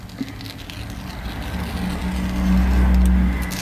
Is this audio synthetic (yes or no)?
no